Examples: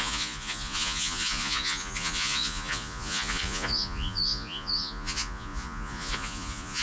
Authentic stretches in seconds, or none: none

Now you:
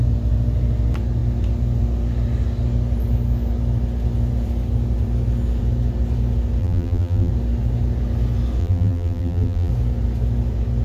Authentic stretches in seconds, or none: 0.0-6.6; 7.3-8.6; 9.7-10.8

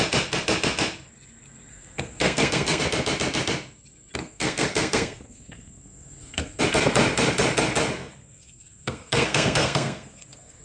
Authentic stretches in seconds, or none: 0.0-1.7; 2.8-4.2; 6.6-8.0

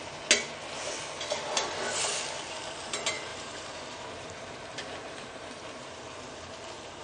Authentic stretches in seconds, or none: 0.0-3.3; 6.4-7.0

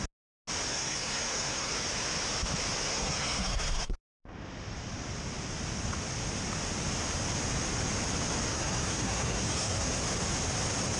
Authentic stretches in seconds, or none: 0.0-0.7; 1.7-2.9; 4.0-8.5; 10.0-11.0

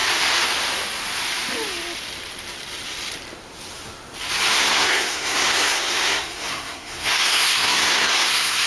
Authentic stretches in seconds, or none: 0.0-4.6